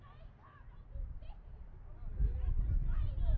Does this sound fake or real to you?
real